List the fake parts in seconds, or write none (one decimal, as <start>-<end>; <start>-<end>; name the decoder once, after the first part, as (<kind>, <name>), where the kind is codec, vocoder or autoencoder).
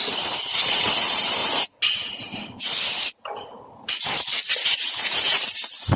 none